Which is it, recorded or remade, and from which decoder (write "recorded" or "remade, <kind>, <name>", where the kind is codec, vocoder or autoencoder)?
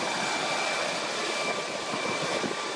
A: recorded